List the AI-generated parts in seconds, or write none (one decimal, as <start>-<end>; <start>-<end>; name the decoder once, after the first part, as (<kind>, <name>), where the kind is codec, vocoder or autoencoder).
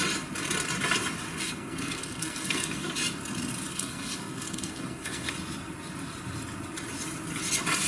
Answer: 1.3-2.9 (codec, SNAC); 3.7-5.3